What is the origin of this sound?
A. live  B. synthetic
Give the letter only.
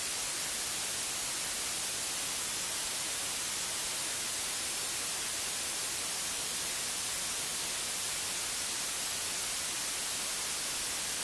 A